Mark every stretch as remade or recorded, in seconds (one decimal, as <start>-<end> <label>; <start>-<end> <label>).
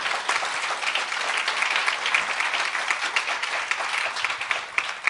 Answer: 0.0-5.1 recorded